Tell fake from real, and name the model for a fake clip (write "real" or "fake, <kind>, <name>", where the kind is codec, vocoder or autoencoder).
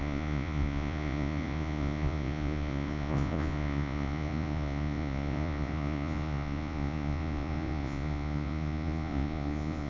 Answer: fake, vocoder, Vocos